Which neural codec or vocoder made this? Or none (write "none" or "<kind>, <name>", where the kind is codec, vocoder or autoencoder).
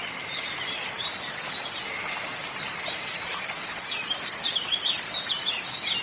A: none